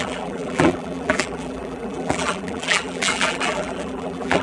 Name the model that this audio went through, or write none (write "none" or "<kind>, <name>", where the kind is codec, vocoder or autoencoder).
vocoder, BigVGAN v2